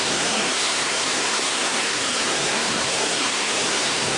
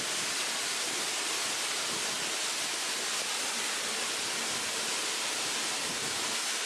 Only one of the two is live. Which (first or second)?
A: second